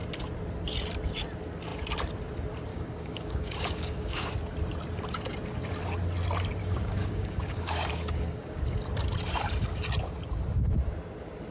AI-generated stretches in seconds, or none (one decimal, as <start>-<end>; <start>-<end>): 2.7-4.3; 6.6-8.6